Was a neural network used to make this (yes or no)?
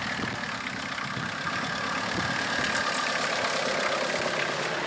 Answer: no